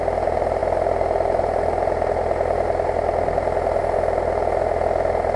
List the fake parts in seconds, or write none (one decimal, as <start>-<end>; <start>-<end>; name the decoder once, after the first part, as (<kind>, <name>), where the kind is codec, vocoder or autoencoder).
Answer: none